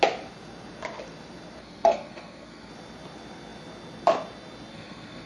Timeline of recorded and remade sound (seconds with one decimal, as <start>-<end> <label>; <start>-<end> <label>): 0.0-1.6 recorded; 1.6-2.7 remade; 2.7-4.7 recorded; 4.7-5.3 remade